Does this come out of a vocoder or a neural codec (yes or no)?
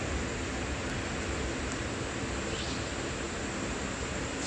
no